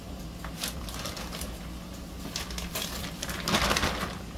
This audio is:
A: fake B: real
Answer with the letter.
B